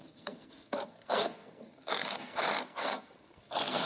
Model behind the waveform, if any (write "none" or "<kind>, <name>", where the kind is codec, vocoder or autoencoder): codec, SNAC